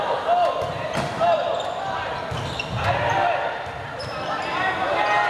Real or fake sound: fake